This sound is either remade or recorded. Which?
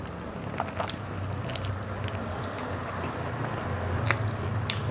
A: recorded